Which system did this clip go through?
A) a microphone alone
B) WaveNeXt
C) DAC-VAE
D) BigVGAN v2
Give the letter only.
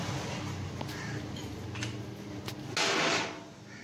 A